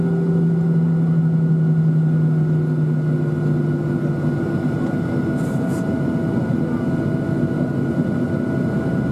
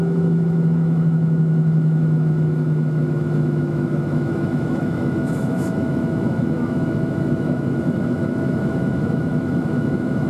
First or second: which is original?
first